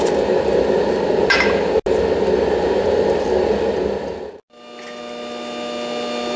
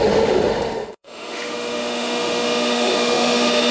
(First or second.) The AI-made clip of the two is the second